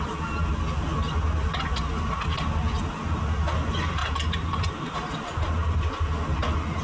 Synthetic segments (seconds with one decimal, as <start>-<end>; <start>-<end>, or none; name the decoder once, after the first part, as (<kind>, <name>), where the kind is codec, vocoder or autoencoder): 4.0-5.9 (vocoder, BigVGAN v2)